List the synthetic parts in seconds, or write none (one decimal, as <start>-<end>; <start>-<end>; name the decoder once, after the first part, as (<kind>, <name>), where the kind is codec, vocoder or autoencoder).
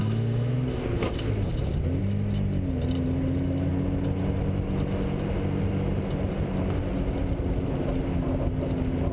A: none